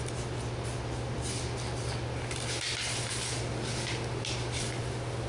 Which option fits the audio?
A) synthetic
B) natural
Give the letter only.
B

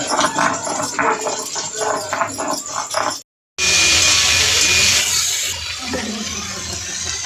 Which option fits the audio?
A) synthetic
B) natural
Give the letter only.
B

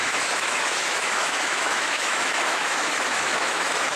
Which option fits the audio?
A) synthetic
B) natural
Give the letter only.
A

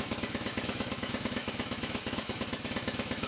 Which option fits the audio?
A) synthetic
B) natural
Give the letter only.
A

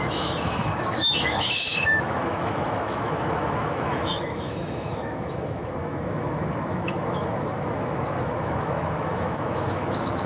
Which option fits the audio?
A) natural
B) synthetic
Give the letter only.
B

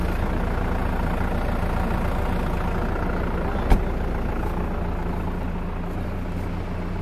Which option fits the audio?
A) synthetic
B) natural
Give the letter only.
B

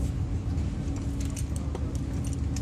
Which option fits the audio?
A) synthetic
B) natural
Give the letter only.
B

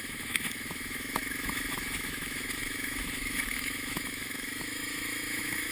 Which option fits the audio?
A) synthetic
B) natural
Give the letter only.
A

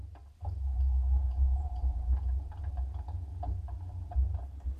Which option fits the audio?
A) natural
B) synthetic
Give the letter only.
A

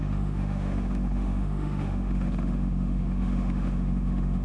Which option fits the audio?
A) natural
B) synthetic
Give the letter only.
B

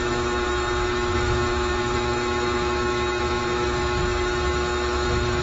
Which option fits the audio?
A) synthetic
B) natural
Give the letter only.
A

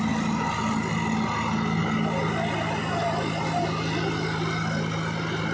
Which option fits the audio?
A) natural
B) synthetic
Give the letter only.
A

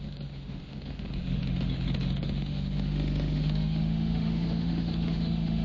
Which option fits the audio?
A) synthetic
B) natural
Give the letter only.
A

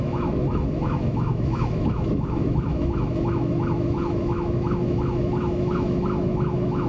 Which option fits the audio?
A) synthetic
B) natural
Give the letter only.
A